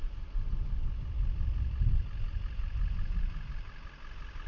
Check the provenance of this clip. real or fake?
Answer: real